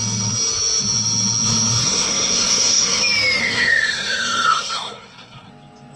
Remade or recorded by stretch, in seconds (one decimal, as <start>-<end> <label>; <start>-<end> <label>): 0.0-1.8 recorded; 1.8-3.0 remade; 3.0-3.4 recorded; 3.4-5.5 remade; 5.5-6.0 recorded